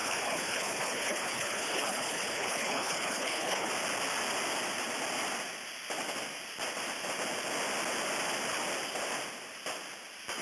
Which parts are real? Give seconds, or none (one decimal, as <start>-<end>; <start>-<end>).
3.7-10.4